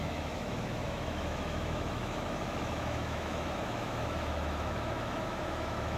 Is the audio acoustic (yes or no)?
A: no